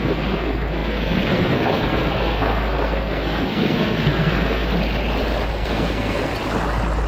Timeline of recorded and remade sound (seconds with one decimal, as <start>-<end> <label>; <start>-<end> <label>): 0.0-4.7 remade; 4.7-5.5 recorded; 5.5-6.3 remade; 6.3-7.1 recorded